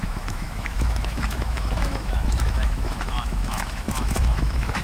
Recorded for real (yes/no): no